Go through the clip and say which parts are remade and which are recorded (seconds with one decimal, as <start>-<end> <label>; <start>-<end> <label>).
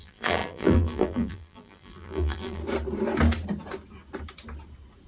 0.0-2.6 remade; 2.6-5.1 recorded